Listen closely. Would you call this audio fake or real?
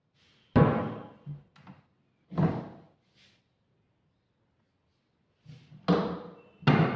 real